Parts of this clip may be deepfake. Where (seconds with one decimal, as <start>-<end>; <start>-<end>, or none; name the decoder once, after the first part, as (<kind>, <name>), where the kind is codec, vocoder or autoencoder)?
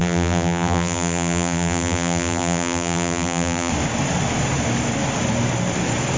0.0-3.7 (vocoder, BigVGAN v2)